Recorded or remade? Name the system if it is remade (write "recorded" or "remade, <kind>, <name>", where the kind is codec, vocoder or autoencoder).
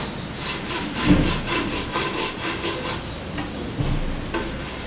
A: recorded